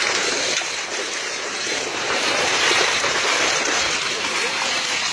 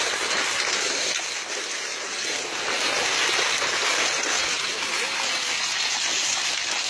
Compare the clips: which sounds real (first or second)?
second